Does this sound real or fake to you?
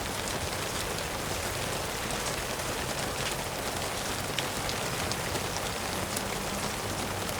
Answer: real